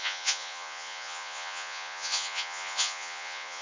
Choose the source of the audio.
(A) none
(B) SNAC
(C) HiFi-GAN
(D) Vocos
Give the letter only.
D